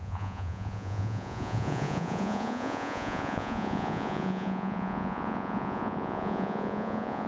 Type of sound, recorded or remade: remade